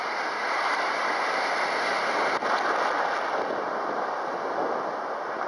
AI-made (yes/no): no